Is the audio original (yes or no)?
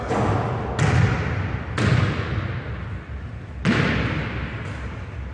yes